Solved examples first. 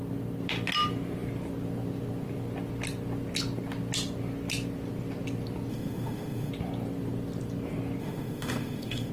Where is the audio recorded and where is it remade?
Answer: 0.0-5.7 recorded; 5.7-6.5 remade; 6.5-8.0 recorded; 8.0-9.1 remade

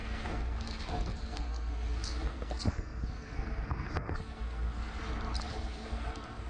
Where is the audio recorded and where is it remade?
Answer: 0.0-5.0 remade; 5.0-5.5 recorded; 5.5-6.5 remade

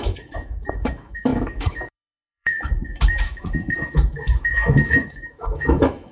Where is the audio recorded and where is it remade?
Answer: 0.0-6.1 remade

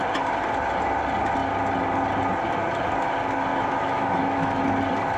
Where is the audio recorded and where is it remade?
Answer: 0.0-3.5 recorded; 3.5-4.6 remade; 4.6-5.2 recorded

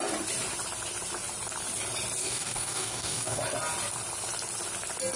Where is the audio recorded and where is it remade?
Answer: 0.0-2.2 recorded; 2.2-3.4 remade; 3.4-5.2 recorded

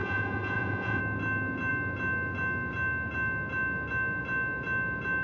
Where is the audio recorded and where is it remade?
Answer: 0.0-1.0 remade; 1.0-5.2 recorded

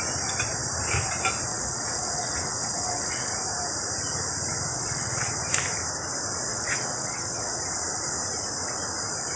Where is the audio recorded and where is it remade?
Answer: 0.0-1.5 recorded; 1.5-3.3 remade; 3.3-4.7 recorded; 4.7-5.3 remade; 5.3-6.5 recorded; 6.5-7.6 remade; 7.6-9.4 recorded